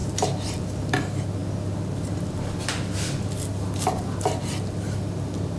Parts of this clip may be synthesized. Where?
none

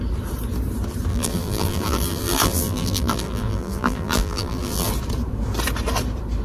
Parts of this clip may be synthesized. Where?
1.1-4.9 (vocoder, BigVGAN v2)

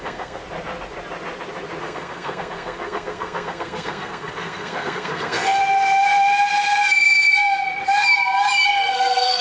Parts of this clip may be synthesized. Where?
0.0-0.4 (codec, SNAC); 1.8-5.6; 8.7-9.4

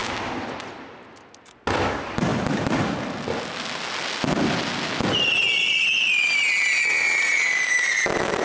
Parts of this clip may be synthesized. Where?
none

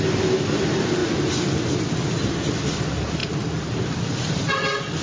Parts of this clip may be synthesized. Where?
1.0-1.7 (vocoder, BigVGAN v2); 3.2-4.3